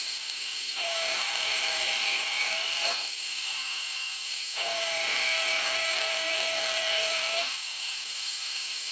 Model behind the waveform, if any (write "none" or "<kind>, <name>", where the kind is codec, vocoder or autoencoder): codec, DAC